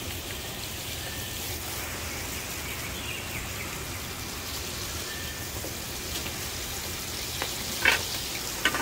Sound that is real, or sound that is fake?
real